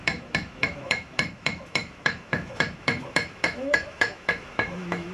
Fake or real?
fake